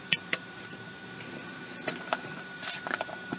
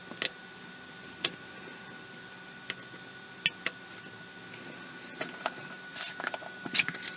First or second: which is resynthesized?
first